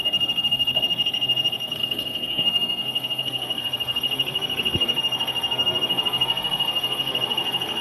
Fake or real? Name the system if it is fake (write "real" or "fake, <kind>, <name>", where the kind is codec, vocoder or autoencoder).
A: fake, codec, SNAC